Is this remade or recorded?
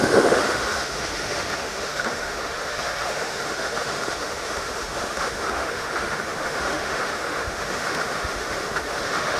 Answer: remade